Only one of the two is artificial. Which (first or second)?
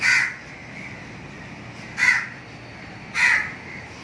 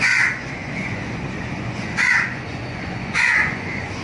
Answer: second